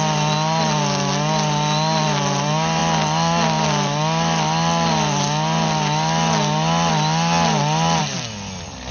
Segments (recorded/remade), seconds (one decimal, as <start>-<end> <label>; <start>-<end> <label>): 0.0-8.9 recorded